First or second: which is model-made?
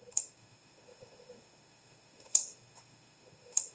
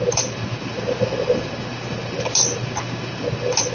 first